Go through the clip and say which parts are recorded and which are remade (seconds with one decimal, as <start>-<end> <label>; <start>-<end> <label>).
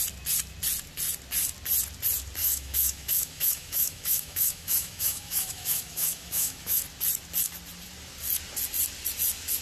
0.0-2.4 recorded; 2.4-6.8 remade; 6.8-9.6 recorded